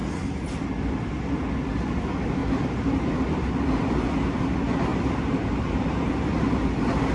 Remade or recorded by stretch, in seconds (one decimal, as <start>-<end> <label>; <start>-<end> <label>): 0.0-0.7 remade; 0.7-2.4 recorded; 2.4-3.5 remade; 3.5-4.9 recorded; 4.9-6.1 remade; 6.1-7.1 recorded